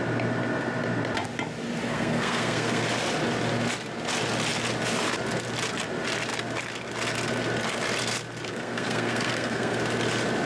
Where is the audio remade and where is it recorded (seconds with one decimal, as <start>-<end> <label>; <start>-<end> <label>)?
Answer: 0.0-1.9 recorded; 1.9-2.8 remade; 2.8-8.5 recorded; 8.5-9.8 remade; 9.8-10.5 recorded

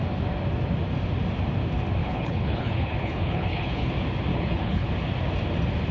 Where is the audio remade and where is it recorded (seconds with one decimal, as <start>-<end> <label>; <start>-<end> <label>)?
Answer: 0.0-2.0 recorded; 2.0-3.9 remade; 3.9-4.3 recorded; 4.3-4.9 remade; 4.9-5.9 recorded